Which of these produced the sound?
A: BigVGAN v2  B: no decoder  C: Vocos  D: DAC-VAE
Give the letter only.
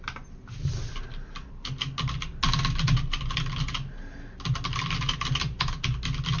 B